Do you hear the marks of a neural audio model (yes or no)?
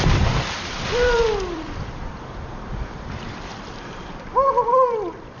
yes